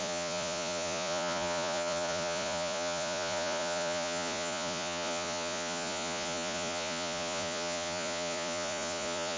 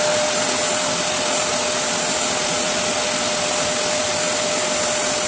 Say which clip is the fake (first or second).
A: first